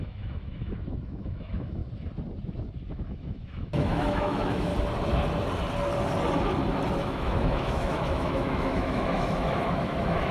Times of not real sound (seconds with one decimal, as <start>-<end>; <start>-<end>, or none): 0.0-1.8; 2.9-4.7; 7.0-10.3